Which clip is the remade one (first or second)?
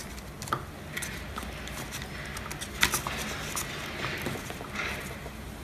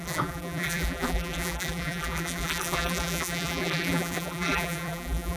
second